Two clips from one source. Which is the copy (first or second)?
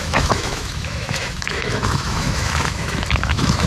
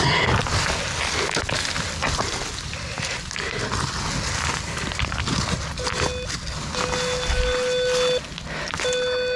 first